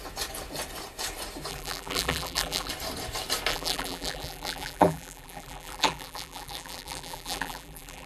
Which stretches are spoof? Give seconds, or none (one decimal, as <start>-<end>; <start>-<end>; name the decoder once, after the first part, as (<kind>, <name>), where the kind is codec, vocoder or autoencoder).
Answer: 1.5-2.7 (vocoder, BigVGAN v2); 3.5-8.1